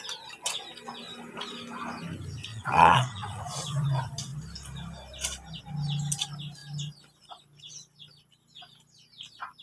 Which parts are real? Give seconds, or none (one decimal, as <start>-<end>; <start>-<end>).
0.0-2.5; 3.4-9.6